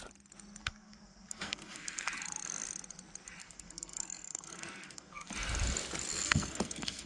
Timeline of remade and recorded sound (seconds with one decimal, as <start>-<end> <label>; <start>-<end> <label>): 0.0-0.6 recorded; 0.6-2.1 remade; 2.1-3.4 recorded; 3.4-5.3 remade; 5.3-6.2 recorded; 6.2-7.1 remade